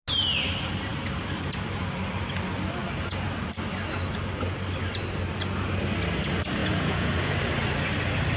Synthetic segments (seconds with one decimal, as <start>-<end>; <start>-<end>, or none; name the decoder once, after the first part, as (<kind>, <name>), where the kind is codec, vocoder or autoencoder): 6.6-7.3 (vocoder, Vocos)